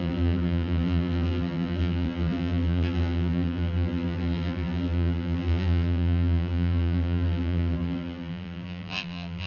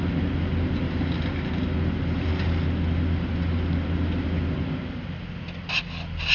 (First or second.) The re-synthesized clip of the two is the first